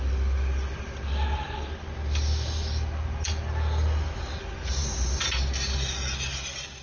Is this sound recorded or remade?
recorded